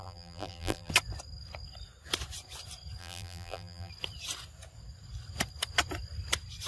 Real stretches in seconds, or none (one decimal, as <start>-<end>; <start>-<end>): 0.9-3.0; 3.9-6.7